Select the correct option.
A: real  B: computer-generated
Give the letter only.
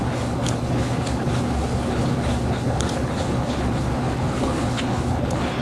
B